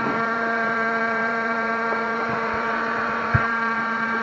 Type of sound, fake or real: fake